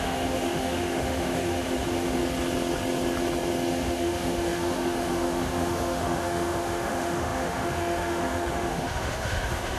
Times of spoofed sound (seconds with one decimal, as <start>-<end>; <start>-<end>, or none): 0.0-2.2; 3.7-9.8